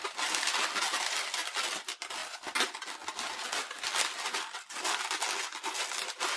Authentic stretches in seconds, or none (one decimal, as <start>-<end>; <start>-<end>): 0.0-6.4